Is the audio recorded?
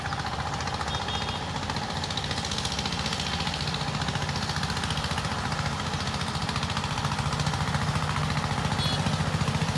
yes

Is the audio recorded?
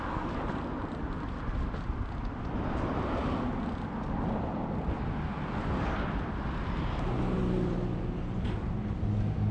yes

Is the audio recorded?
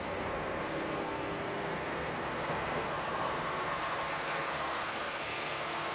no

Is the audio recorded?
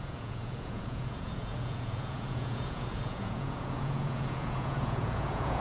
no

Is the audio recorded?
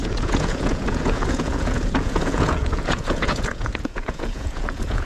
no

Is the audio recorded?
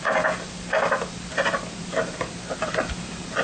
yes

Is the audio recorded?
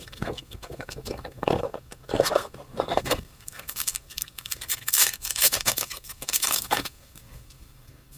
no